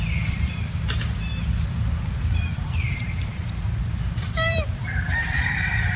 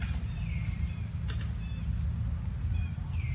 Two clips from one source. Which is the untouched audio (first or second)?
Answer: second